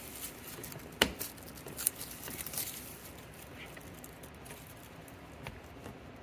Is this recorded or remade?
recorded